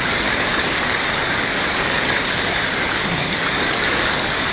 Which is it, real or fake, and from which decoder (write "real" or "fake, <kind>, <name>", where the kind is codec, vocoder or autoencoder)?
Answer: fake, codec, DAC